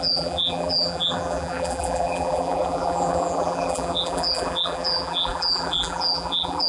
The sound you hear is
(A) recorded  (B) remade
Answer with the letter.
B